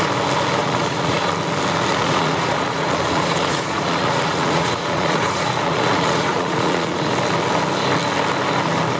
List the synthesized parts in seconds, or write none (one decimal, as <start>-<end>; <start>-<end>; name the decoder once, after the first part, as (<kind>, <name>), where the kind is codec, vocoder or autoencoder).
0.6-1.3 (vocoder, Vocos); 1.9-7.1